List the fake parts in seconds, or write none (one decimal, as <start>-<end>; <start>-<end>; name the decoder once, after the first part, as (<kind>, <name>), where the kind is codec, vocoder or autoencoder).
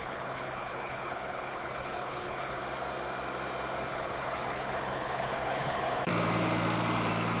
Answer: 0.0-2.6 (codec, HILCodec); 3.9-6.1